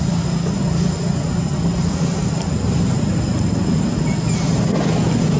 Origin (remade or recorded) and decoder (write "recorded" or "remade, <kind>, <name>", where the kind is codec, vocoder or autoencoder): recorded